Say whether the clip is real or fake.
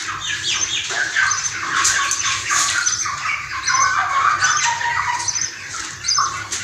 fake